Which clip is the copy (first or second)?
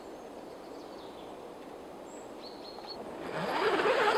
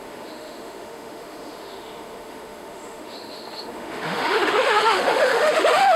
second